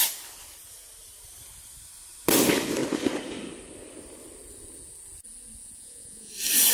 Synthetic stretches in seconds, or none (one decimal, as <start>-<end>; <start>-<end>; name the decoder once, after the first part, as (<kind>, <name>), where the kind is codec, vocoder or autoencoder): 5.6-6.3 (vocoder, Vocos)